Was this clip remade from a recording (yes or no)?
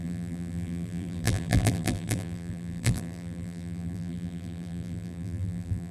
yes